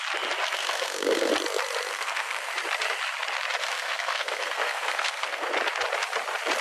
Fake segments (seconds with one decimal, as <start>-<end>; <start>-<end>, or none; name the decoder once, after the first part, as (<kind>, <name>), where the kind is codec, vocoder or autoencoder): 0.6-1.3 (codec, SNAC); 1.9-2.5; 3.6-5.5

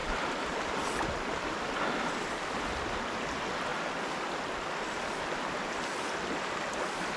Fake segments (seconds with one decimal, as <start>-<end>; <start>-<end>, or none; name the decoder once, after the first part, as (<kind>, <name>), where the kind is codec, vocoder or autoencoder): 0.0-1.5 (vocoder, BigVGAN v2); 3.7-4.3

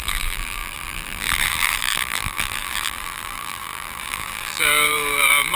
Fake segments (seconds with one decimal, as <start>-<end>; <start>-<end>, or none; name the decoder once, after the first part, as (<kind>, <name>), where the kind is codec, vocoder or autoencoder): 0.0-5.5 (vocoder, BigVGAN v2)

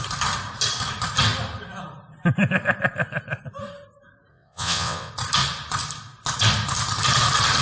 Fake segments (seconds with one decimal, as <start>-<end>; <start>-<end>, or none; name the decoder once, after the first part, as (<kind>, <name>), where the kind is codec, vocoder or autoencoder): 4.3-5.1 (vocoder, WaveNeXt)

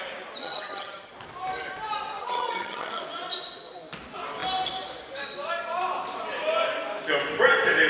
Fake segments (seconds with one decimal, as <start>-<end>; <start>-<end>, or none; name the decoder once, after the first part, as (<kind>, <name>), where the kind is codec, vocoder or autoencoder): 0.4-1.1 (vocoder, HiFi-GAN); 2.2-3.0

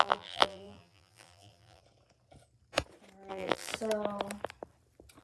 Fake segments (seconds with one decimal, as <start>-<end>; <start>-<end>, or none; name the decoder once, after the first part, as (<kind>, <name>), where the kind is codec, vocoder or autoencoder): 0.0-1.8 (vocoder, BigVGAN v2); 3.3-3.7